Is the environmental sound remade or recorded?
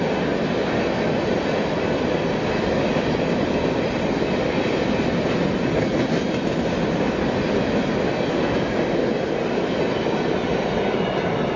recorded